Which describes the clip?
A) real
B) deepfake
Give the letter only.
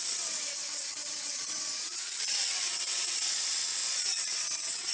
B